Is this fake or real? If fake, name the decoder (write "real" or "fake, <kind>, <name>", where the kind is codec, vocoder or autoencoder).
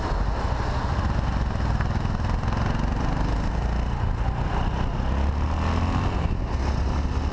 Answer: real